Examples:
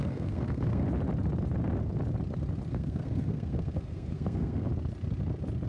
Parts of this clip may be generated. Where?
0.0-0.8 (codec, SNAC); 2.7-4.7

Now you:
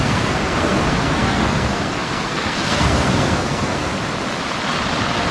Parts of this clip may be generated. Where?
0.0-3.9 (codec, SNAC)

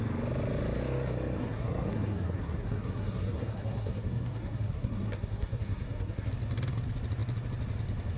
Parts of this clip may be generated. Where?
1.4-6.3 (codec, SNAC)

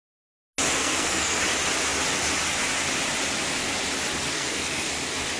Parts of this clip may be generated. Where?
0.8-1.4 (codec, SNAC); 4.3-4.9

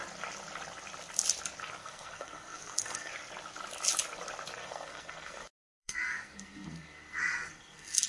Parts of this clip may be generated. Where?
1.8-3.1 (codec, SNAC); 4.6-8.1

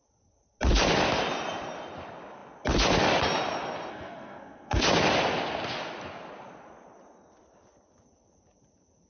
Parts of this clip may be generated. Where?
3.9-4.8 (codec, SNAC)